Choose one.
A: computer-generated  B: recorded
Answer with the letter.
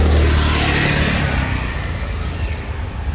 B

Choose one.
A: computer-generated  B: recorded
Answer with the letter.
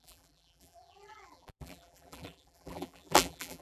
A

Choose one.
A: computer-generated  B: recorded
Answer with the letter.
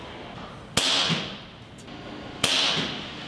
B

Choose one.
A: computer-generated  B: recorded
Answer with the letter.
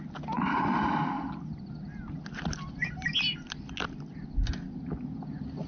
B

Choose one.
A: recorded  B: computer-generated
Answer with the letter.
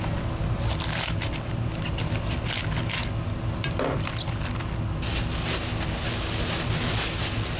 A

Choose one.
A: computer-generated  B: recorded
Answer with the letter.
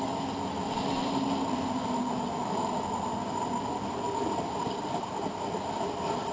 A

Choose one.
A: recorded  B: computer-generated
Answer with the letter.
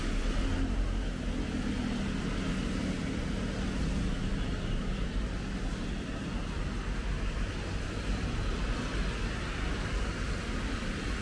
A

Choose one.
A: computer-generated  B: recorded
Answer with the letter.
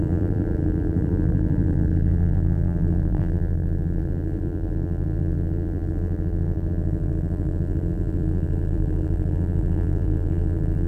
A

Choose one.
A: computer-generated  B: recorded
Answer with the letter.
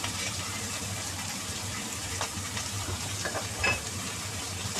A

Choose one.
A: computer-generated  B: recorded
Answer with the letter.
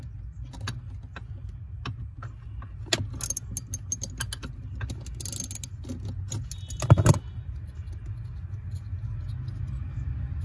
B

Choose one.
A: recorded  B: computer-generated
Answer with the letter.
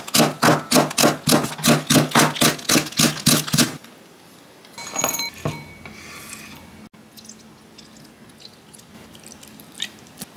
A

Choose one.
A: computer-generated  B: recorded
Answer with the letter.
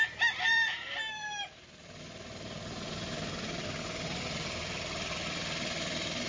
A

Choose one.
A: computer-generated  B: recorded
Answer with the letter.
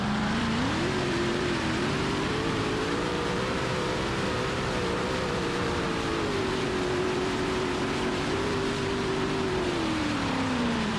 A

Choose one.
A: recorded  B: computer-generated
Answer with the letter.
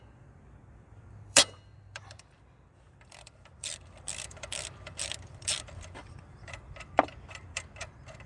B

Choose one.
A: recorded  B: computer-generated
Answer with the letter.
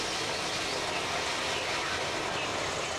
A